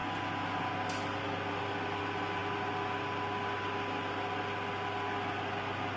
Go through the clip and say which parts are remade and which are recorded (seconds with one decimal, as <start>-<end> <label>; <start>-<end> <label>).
0.0-6.0 recorded